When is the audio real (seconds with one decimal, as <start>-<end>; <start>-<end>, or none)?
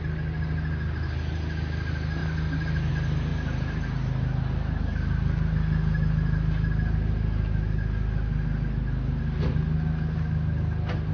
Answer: 0.0-11.1